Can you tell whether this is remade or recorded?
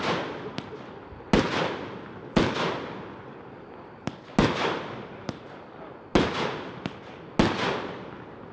recorded